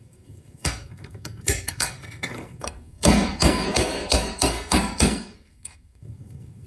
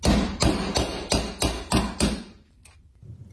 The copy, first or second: first